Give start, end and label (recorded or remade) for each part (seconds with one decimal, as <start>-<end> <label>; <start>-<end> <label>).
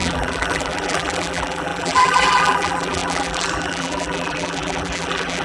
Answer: 0.0-5.4 remade